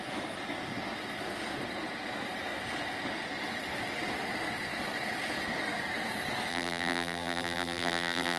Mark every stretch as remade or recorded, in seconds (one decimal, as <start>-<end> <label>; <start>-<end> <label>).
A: 0.0-6.5 recorded; 6.5-8.4 remade

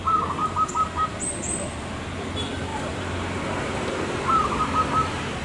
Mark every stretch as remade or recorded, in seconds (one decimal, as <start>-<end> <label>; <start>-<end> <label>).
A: 0.0-0.4 recorded; 0.4-1.2 remade; 1.2-2.7 recorded; 2.7-4.6 remade; 4.6-5.4 recorded